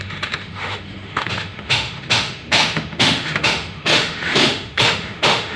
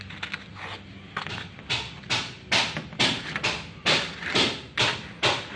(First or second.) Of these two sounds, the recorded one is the second